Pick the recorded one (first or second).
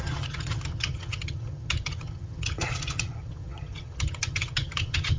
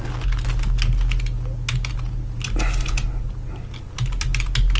second